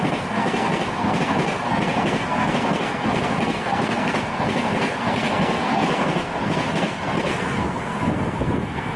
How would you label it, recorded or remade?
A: remade